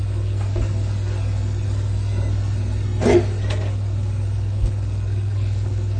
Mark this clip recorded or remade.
remade